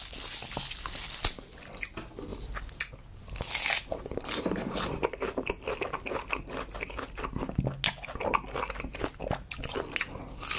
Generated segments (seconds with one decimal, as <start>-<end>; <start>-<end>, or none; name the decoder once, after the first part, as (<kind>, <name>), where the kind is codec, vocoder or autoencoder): none